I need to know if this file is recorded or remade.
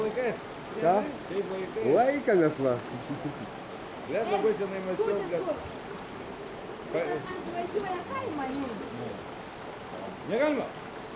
recorded